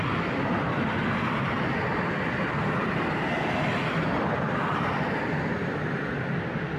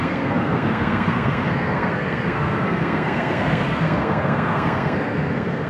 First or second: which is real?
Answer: first